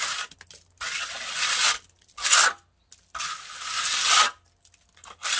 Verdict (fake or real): real